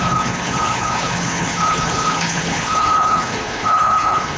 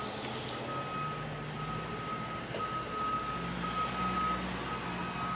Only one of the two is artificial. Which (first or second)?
first